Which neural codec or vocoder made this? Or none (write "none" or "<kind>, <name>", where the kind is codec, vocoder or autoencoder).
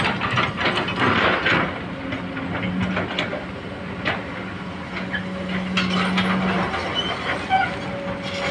none